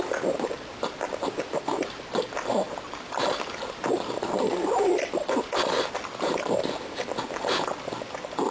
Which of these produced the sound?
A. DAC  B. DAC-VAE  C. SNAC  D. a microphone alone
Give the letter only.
D